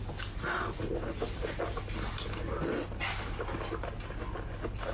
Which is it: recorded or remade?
recorded